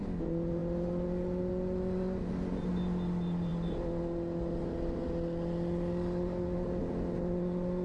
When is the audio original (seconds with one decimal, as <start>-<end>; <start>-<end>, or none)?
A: 0.0-7.8